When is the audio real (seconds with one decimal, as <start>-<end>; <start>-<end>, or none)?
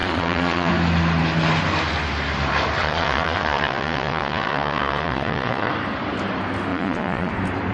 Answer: 0.7-2.8; 5.7-6.7; 7.3-7.7